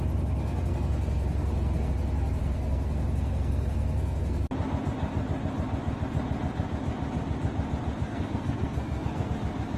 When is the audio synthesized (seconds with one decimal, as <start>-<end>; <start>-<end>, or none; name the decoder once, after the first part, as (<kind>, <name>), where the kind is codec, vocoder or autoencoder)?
0.4-1.9 (codec, SNAC); 2.4-4.5; 8.1-9.3